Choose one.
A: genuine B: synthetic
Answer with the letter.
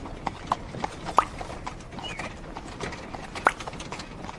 A